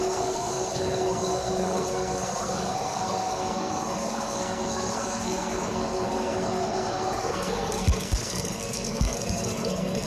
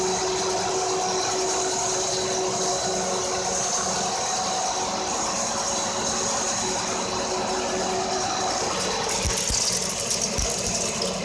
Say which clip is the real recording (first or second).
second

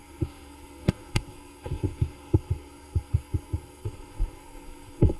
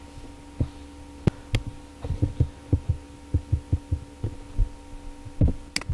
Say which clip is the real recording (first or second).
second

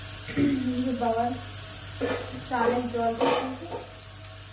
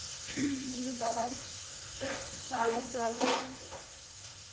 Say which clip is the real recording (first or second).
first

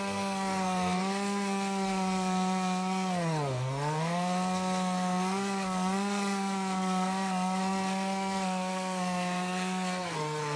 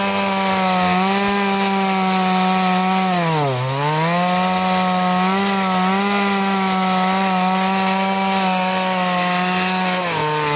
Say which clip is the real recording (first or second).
second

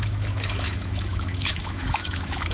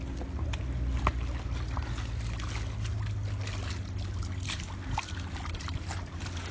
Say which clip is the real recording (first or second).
second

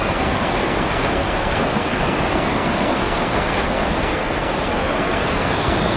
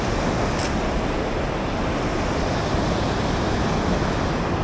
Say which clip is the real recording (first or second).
second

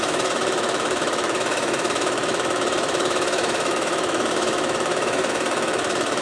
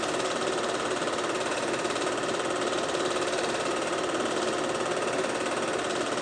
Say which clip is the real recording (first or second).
second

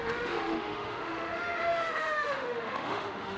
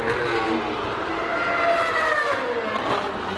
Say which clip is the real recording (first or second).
second